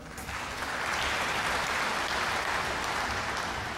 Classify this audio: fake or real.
real